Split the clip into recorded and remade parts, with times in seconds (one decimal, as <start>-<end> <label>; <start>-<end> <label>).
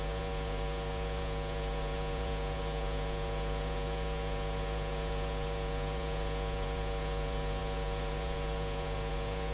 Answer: 0.0-9.5 remade